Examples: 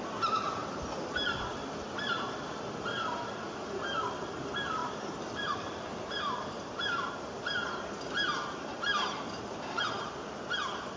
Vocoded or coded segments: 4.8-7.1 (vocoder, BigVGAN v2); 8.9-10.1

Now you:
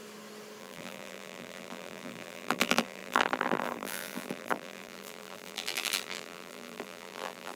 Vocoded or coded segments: 0.6-7.6 (vocoder, BigVGAN v2)